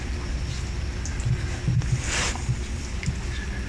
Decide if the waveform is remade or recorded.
recorded